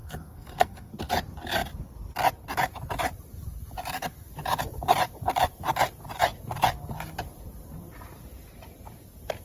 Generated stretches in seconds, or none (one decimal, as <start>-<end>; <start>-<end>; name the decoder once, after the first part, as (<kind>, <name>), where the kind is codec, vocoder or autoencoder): 0.0-1.0 (codec, SNAC)